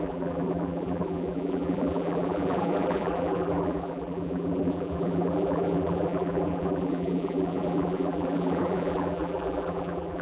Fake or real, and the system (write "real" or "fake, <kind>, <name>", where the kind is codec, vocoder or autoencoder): fake, vocoder, BigVGAN v2